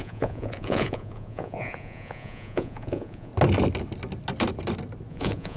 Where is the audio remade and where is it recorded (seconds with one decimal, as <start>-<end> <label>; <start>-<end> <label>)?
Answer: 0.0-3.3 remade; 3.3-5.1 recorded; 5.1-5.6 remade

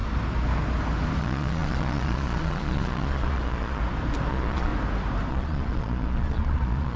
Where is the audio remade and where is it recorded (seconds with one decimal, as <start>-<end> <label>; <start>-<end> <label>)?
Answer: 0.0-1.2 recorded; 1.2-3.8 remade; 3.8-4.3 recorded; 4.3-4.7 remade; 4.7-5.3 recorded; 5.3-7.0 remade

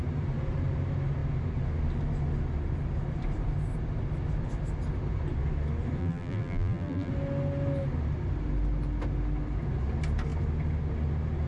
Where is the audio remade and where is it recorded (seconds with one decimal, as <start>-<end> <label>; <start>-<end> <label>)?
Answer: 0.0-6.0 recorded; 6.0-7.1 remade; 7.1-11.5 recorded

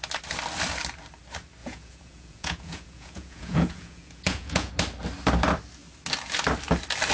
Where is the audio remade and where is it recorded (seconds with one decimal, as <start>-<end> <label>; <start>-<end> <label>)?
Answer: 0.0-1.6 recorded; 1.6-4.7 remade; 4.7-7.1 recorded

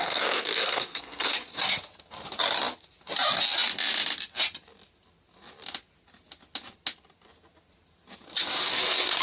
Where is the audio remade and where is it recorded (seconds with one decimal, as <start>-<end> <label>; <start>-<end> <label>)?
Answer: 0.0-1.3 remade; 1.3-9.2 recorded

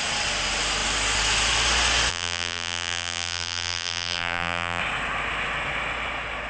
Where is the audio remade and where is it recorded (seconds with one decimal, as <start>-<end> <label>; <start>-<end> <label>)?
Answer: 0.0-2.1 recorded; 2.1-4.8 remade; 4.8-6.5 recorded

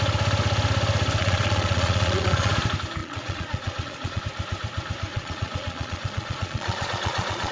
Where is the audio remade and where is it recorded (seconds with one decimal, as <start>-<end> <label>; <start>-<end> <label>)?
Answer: 0.0-1.2 recorded; 1.2-2.5 remade; 2.5-3.0 recorded; 3.0-4.2 remade; 4.2-5.1 recorded; 5.1-7.5 remade